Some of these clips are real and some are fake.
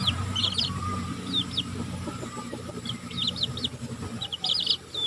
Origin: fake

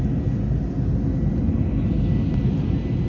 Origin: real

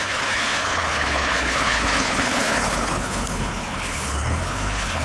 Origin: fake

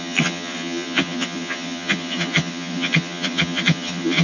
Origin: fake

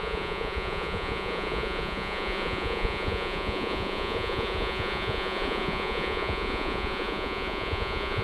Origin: fake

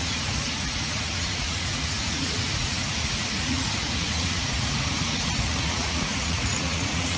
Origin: fake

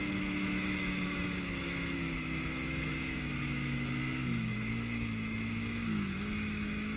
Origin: fake